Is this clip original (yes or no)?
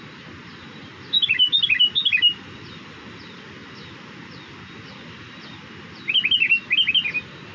yes